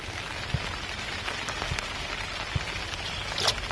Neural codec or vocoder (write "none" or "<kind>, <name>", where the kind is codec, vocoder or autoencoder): none